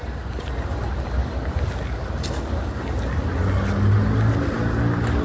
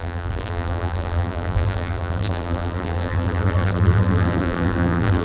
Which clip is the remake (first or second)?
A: second